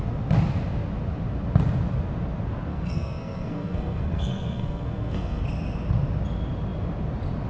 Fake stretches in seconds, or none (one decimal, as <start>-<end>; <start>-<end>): 2.7-5.4